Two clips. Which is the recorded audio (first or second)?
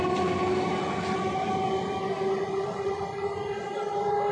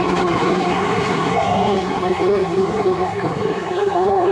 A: first